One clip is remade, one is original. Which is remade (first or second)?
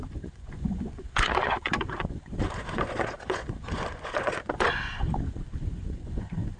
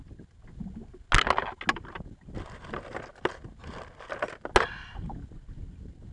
first